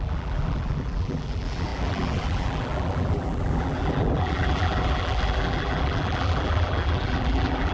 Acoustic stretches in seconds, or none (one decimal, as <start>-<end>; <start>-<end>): none